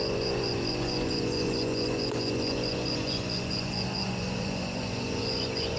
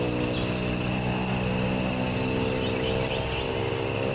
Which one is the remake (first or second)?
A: first